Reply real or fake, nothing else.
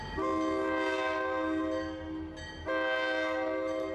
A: real